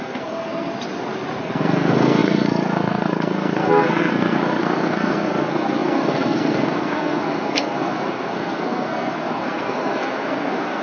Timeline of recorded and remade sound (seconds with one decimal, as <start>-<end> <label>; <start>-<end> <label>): 0.0-0.7 remade; 0.7-1.4 recorded; 1.4-10.8 remade